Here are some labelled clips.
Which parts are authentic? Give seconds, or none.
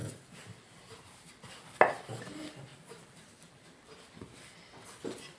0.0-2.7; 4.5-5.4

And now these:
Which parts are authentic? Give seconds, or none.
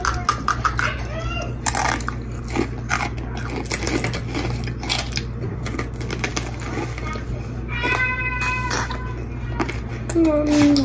0.0-10.8